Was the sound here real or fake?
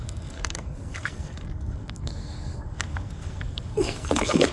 fake